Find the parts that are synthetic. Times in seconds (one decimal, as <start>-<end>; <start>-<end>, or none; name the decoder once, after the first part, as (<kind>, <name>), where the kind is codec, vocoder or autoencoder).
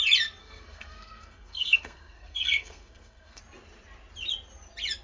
0.4-3.4 (codec, SNAC)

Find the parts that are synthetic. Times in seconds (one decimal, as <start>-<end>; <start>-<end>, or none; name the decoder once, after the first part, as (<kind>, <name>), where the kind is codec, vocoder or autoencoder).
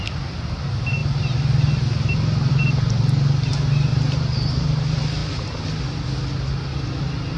3.9-4.8 (vocoder, BigVGAN v2)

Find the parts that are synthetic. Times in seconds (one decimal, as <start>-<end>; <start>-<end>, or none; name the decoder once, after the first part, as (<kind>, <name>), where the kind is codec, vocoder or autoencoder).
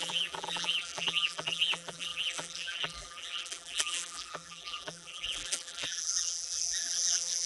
0.0-7.5 (vocoder, BigVGAN v2)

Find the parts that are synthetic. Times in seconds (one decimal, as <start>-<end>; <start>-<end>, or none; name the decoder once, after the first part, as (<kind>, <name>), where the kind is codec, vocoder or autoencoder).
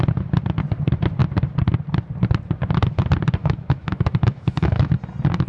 3.4-4.9 (autoencoder, DAC-VAE)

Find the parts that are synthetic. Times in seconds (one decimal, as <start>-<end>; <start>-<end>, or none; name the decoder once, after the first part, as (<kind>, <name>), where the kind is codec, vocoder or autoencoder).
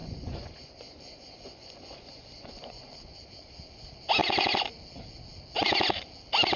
0.0-3.3 (vocoder, Vocos)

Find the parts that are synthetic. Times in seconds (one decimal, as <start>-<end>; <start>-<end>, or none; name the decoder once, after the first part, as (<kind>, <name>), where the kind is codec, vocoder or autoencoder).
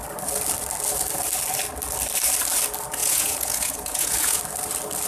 3.0-4.4 (vocoder, Vocos)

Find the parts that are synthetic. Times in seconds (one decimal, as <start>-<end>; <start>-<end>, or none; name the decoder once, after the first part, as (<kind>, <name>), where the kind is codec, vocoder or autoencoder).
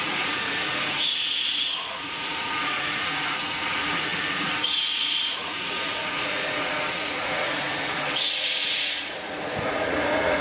0.0-10.4 (vocoder, Vocos)